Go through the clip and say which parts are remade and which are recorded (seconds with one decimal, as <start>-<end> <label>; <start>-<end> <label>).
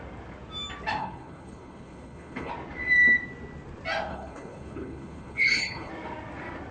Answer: 0.0-1.0 recorded; 1.0-2.5 remade; 2.5-4.1 recorded; 4.1-5.9 remade; 5.9-6.7 recorded